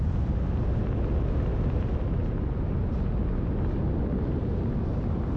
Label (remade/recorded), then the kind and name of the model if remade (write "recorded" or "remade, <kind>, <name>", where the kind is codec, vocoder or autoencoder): recorded